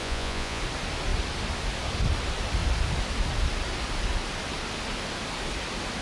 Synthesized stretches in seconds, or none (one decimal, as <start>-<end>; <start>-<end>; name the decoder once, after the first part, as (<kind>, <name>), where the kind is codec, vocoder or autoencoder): 0.0-0.6 (vocoder, Vocos)